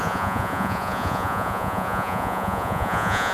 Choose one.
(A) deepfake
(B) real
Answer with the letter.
A